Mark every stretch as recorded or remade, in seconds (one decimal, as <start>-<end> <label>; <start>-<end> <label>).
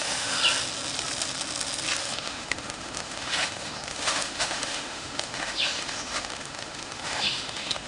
0.0-0.4 remade; 0.4-2.0 recorded; 2.0-7.9 remade